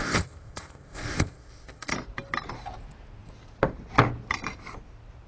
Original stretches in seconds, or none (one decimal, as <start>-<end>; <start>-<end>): 1.9-5.3